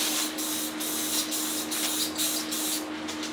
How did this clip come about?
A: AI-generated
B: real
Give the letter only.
B